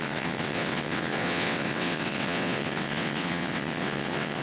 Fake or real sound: fake